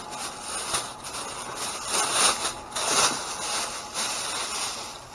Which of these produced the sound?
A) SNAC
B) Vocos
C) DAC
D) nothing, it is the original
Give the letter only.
D